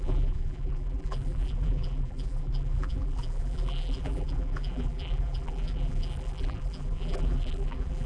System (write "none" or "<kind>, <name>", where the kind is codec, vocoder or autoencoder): vocoder, BigVGAN v2